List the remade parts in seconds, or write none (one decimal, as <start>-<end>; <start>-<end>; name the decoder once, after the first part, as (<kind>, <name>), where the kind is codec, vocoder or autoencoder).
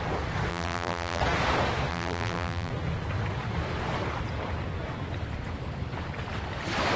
0.5-1.2 (vocoder, BigVGAN v2); 1.9-2.7